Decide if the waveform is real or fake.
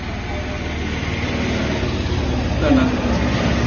real